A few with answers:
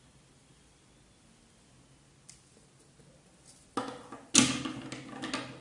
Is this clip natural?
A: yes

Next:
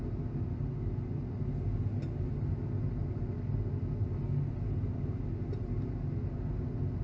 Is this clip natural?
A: yes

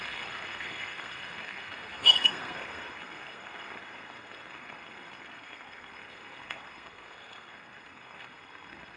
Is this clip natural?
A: no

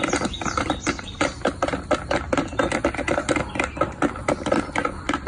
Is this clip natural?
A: yes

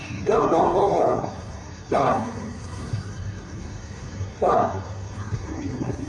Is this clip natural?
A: no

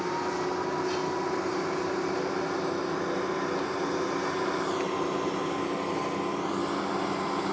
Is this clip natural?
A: yes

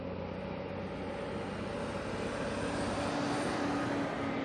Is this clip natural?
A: yes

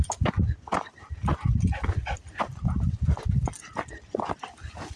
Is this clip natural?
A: yes